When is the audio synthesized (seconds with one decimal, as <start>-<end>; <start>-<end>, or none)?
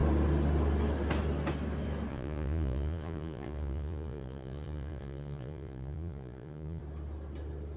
2.1-6.8